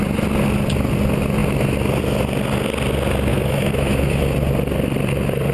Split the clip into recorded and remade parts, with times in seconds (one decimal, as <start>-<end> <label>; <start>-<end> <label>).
0.0-3.3 recorded; 3.3-4.2 remade; 4.2-5.5 recorded